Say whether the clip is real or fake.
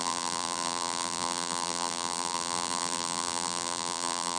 fake